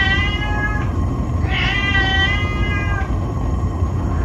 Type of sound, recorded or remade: recorded